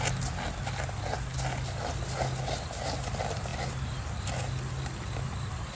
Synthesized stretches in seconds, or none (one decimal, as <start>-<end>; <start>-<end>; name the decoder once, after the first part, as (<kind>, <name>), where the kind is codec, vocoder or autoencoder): none